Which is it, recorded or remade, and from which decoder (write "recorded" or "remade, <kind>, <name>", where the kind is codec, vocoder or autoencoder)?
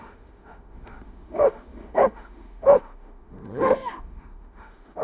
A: remade, autoencoder, DAC-VAE